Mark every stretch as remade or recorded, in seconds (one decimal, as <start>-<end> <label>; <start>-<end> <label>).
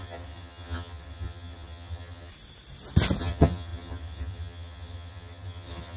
0.0-2.3 remade; 2.3-3.2 recorded; 3.2-6.0 remade